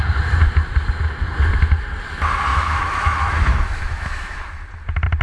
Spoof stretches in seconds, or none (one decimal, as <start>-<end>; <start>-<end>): 2.5-4.6